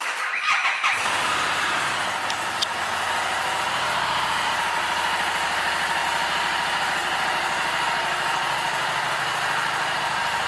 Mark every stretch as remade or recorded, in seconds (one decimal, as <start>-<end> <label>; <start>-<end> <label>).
0.0-10.5 recorded